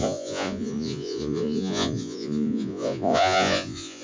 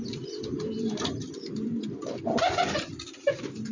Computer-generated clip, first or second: first